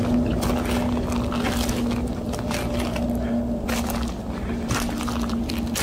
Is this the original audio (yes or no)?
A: yes